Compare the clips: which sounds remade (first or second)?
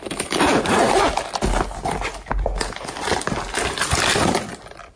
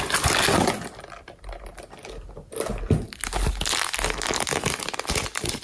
first